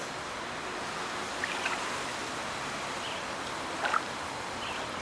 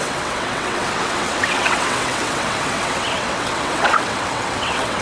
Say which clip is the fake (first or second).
second